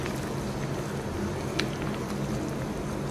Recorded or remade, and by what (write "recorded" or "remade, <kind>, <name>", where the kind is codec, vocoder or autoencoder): recorded